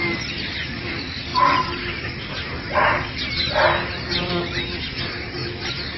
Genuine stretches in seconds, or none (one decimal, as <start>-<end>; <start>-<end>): 0.0-6.0